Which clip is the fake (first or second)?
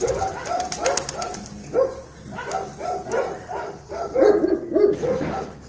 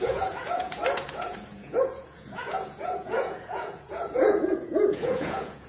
second